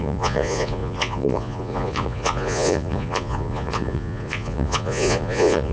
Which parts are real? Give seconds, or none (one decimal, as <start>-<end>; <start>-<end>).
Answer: none